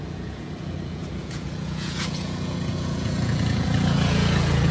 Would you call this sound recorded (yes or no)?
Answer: no